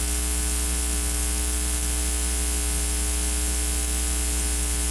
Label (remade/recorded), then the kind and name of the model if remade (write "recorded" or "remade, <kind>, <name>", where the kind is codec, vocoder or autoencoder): recorded